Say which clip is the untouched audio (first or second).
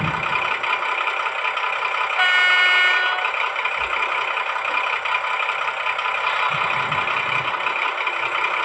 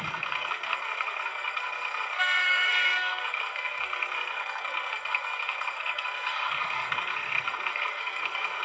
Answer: first